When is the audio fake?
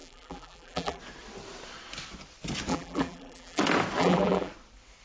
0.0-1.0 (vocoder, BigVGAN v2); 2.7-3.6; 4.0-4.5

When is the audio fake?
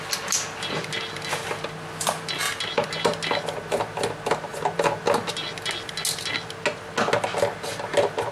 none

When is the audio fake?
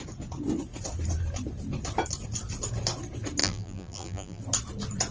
3.4-4.4 (vocoder, BigVGAN v2)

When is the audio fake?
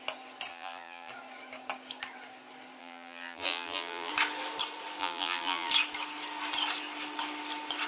0.5-1.1 (vocoder, BigVGAN v2); 2.8-4.1; 5.0-5.7